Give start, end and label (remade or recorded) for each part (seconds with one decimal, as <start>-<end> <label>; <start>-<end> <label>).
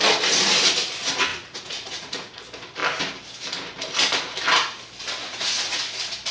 0.0-1.3 recorded; 1.3-2.4 remade; 2.4-5.2 recorded; 5.2-5.8 remade; 5.8-6.3 recorded